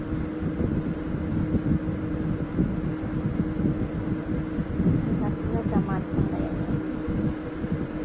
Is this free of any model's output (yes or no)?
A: yes